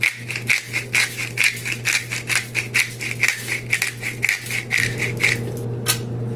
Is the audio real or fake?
real